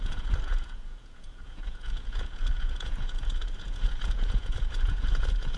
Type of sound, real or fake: fake